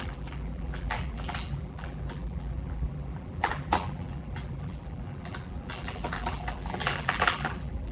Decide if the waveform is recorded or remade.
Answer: remade